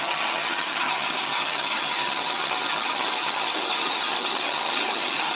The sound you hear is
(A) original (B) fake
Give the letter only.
B